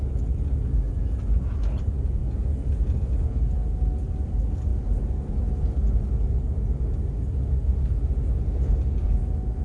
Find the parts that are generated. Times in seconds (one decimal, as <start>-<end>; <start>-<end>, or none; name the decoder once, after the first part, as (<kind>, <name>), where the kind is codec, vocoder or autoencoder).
none